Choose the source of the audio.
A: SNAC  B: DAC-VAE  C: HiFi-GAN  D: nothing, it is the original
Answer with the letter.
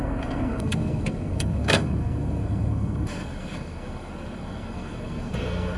A